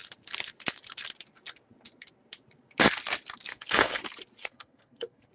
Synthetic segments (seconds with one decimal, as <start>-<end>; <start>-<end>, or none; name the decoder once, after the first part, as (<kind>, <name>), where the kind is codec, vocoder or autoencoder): 3.5-4.0 (codec, SNAC); 4.4-5.3

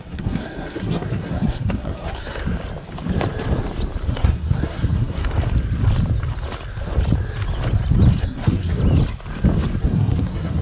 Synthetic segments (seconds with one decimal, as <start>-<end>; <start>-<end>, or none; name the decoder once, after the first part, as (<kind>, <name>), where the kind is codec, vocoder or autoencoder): 0.0-2.4 (codec, SNAC); 4.1-5.2; 8.2-8.8; 9.8-10.6

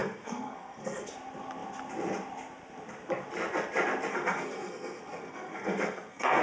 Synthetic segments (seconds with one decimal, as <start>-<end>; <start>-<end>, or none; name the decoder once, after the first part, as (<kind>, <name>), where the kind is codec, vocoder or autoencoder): 0.0-1.1 (codec, SNAC); 4.1-6.4

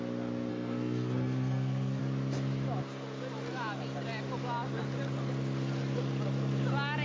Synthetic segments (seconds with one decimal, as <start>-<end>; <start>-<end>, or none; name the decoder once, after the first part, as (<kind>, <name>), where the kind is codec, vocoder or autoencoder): 0.5-2.0 (codec, SNAC)

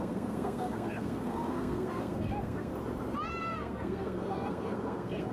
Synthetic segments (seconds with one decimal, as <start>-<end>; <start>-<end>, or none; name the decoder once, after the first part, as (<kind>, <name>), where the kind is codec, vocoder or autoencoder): 0.0-2.7 (codec, SNAC); 3.4-5.3

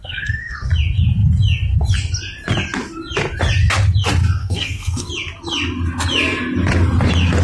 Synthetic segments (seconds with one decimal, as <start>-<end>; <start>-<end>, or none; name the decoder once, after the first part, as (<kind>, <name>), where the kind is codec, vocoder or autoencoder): 0.0-0.7 (codec, SNAC); 4.4-5.1

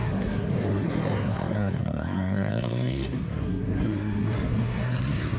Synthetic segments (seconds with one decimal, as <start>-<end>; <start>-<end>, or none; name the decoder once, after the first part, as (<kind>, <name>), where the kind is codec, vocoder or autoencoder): 0.0-5.4 (codec, SNAC)

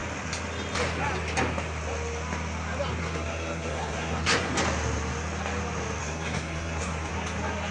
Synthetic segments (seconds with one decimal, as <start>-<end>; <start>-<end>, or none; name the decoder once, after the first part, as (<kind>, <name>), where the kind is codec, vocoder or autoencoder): 3.0-4.5 (codec, SNAC); 6.0-7.1